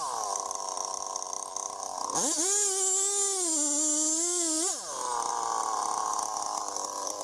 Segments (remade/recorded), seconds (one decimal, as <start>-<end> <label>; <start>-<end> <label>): 0.0-7.2 recorded